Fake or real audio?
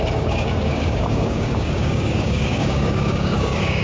fake